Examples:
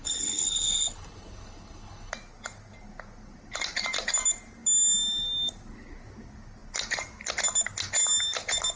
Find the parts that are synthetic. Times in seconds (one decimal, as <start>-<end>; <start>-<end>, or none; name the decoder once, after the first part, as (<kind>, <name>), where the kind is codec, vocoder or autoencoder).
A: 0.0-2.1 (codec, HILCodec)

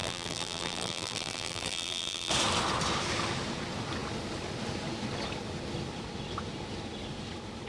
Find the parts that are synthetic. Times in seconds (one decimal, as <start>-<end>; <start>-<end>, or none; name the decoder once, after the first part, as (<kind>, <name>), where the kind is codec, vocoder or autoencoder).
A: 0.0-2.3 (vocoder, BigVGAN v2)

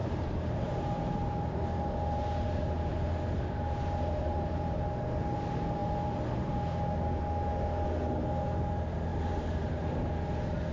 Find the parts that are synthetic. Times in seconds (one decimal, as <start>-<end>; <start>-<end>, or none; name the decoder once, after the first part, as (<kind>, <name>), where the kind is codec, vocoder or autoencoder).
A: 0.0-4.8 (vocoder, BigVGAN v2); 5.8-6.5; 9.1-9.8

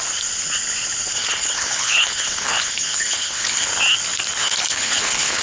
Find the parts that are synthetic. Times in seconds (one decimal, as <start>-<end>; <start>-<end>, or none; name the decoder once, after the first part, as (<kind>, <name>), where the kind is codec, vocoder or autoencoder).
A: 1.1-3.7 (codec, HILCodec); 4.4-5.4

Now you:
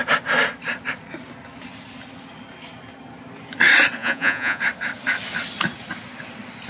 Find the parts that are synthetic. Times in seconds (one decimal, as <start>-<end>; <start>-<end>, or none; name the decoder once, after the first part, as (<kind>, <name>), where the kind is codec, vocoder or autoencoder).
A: 4.0-4.6 (vocoder, Vocos)

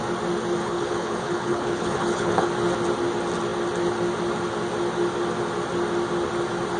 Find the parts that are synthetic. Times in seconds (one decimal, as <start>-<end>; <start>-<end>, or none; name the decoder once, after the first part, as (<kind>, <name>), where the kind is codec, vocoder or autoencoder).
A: 0.6-2.5 (codec, HILCodec)

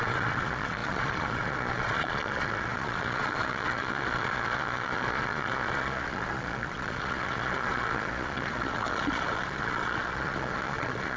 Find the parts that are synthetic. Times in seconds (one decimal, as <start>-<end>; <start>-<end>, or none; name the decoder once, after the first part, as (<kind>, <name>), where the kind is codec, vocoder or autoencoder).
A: 0.0-11.2 (vocoder, Vocos)

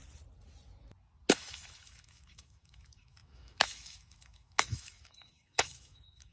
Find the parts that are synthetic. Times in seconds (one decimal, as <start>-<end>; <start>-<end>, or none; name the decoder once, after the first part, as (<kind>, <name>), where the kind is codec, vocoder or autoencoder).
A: 1.3-6.3 (autoencoder, DAC-VAE)